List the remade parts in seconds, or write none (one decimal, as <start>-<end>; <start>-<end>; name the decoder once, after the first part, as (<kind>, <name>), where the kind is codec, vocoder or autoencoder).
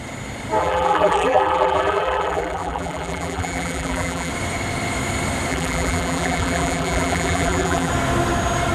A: 0.6-4.3 (vocoder, BigVGAN v2); 5.5-7.9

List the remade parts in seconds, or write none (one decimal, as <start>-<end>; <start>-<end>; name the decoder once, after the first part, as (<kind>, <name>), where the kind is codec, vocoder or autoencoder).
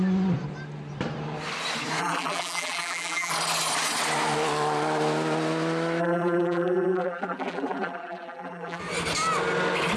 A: 2.0-3.3 (vocoder, BigVGAN v2); 6.0-8.8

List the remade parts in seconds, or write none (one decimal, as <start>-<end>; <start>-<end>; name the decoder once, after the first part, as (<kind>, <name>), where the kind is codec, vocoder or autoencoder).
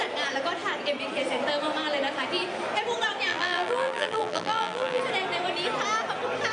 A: 3.3-5.0 (vocoder, BigVGAN v2)